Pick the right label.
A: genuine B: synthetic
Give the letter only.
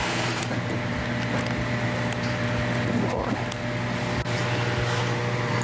A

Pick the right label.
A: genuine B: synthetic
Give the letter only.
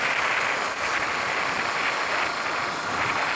A